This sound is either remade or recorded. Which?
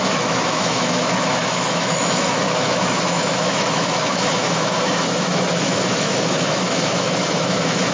remade